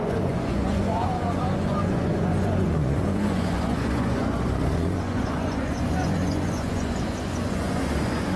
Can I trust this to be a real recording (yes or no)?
no